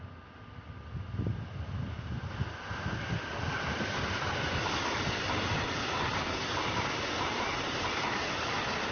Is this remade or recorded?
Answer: recorded